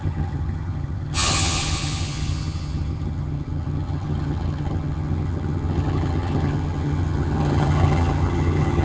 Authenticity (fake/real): fake